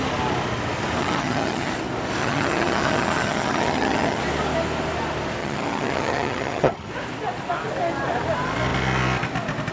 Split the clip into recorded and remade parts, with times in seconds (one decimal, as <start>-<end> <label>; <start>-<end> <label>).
0.0-1.0 recorded; 1.0-1.7 remade; 1.7-2.2 recorded; 2.2-4.2 remade; 4.2-5.4 recorded; 5.4-6.9 remade; 6.9-9.7 recorded

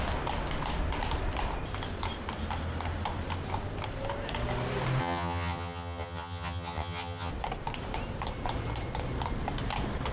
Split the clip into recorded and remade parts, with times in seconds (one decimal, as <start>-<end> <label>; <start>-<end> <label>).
0.0-5.0 recorded; 5.0-7.3 remade; 7.3-10.1 recorded